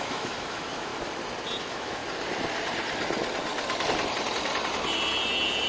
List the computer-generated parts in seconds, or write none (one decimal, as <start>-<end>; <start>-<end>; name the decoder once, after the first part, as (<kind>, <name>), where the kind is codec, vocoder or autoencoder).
0.0-0.9 (autoencoder, DAC-VAE); 1.6-2.0